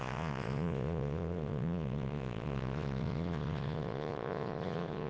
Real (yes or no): no